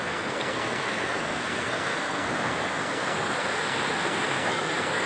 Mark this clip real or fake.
fake